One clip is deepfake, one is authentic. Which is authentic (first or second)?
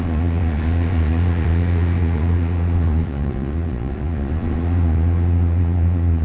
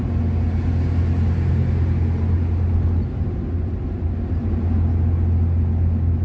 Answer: second